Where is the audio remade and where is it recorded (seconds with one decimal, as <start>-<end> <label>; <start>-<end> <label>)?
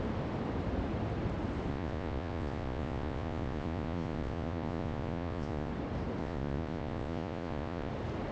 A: 0.0-1.7 recorded; 1.7-5.7 remade; 5.7-6.2 recorded; 6.2-7.9 remade; 7.9-8.3 recorded